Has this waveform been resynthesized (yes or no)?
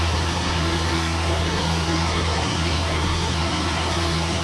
yes